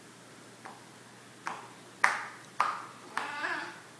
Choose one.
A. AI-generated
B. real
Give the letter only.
B